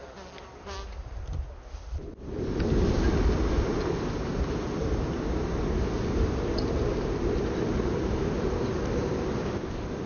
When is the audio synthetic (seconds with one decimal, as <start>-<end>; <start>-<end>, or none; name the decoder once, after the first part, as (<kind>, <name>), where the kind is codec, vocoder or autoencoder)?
none